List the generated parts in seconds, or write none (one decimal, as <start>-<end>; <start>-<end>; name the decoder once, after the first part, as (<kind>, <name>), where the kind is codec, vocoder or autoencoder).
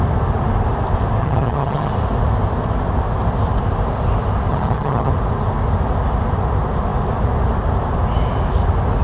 1.2-1.9 (vocoder, HiFi-GAN); 4.5-5.1